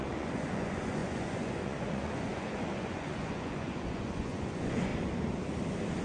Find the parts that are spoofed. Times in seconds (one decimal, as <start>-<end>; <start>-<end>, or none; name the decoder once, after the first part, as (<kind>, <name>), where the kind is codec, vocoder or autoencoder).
0.0-4.9 (vocoder, Vocos)